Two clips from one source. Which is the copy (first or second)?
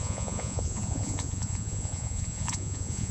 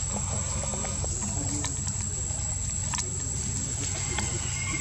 first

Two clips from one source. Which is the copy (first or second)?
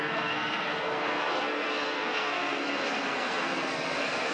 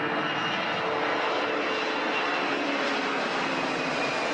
first